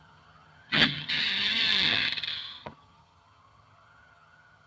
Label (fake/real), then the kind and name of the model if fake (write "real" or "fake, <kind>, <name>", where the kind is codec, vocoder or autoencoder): fake, vocoder, HiFi-GAN